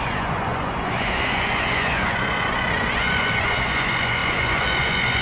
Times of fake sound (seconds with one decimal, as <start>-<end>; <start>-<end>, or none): 0.0-5.2